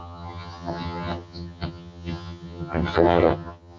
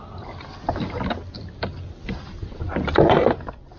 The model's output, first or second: first